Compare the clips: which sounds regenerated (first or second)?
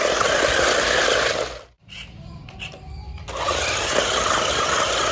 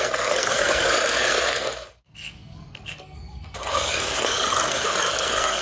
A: second